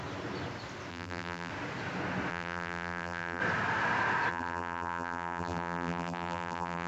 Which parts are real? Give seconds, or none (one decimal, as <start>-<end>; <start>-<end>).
0.0-0.9; 1.5-2.3; 3.4-4.3